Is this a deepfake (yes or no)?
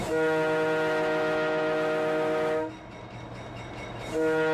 no